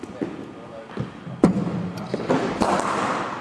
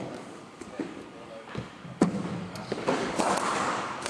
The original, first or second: first